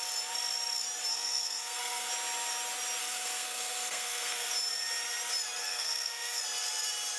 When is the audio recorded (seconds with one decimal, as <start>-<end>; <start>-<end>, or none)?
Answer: 0.0-1.1; 2.1-3.0; 4.5-5.6; 6.4-7.2